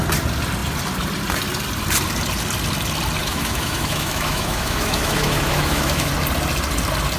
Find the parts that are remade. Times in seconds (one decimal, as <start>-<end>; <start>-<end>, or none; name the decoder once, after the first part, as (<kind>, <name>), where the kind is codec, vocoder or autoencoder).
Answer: 3.2-6.1 (autoencoder, DAC-VAE)